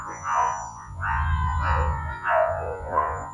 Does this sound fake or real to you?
fake